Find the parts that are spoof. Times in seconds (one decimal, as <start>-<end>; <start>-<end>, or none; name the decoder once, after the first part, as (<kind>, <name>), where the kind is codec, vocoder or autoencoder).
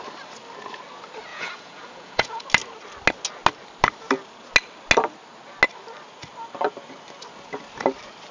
1.3-2.4 (vocoder, Vocos)